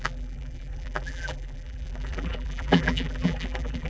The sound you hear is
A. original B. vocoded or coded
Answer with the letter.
B